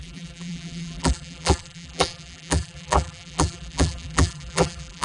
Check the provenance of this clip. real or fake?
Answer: fake